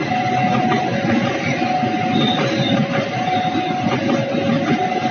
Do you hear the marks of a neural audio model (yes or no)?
no